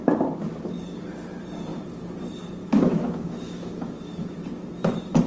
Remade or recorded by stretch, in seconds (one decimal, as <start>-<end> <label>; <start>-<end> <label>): 0.0-2.6 recorded; 2.6-4.1 remade; 4.1-5.3 recorded

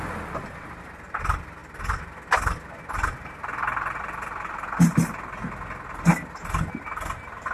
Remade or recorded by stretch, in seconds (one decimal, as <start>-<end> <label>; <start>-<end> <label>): 0.0-7.5 recorded